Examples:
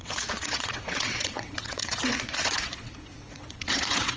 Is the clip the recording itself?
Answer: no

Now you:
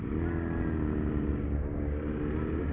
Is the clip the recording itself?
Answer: yes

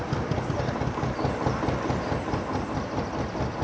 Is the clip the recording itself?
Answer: yes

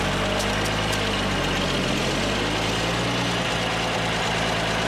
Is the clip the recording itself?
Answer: yes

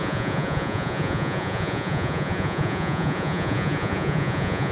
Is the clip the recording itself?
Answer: no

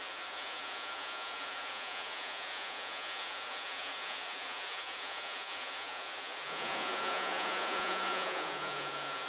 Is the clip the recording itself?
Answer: no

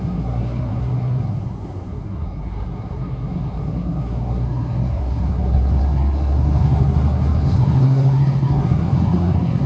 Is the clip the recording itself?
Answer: no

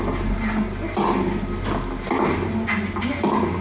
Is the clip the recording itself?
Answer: yes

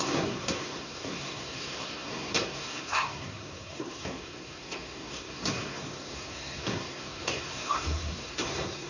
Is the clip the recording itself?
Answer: no